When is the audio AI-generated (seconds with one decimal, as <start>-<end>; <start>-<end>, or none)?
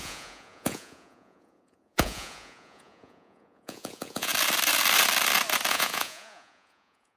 0.0-4.3; 5.7-7.2